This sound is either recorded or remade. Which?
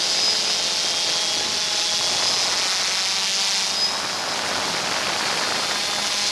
recorded